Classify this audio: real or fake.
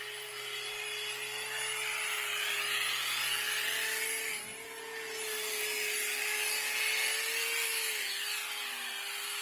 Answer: real